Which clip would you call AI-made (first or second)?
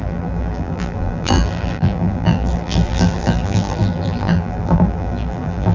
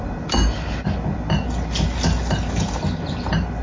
first